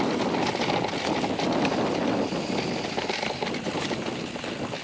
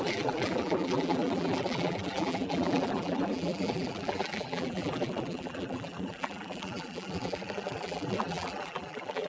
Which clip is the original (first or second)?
first